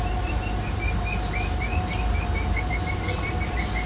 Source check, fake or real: real